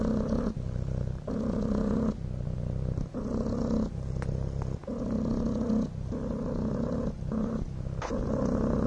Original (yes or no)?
yes